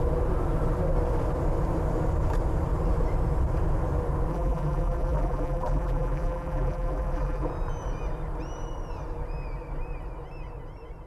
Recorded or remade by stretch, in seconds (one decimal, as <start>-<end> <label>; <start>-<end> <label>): 0.0-4.3 recorded; 4.3-7.5 remade; 7.5-11.1 recorded